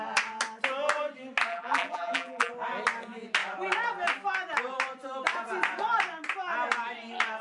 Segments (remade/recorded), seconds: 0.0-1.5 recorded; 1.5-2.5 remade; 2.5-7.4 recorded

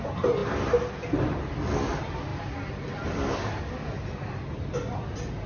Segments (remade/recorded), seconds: 0.0-5.5 recorded

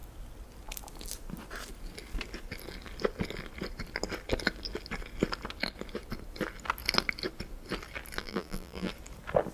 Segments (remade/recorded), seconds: 0.0-8.2 recorded; 8.2-8.9 remade; 8.9-9.5 recorded